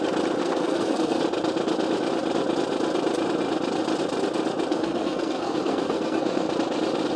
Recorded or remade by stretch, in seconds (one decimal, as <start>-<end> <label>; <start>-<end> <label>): 0.0-0.4 recorded; 0.4-1.2 remade; 1.2-4.7 recorded; 4.7-6.5 remade; 6.5-7.2 recorded